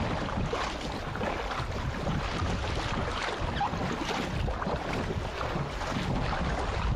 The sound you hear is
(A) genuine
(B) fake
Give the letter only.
A